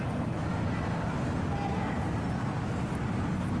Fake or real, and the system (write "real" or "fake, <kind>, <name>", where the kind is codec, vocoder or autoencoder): real